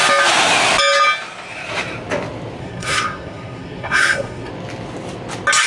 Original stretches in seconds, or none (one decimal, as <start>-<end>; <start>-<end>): 0.0-2.6; 4.5-5.7